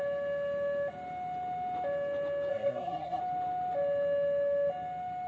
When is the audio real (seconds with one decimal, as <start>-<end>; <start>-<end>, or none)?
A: 0.0-2.5; 3.2-5.3